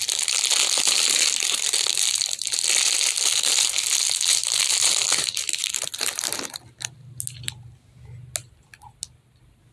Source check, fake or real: real